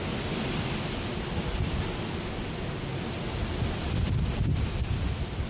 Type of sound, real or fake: real